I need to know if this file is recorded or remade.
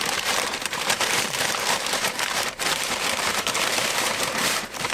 remade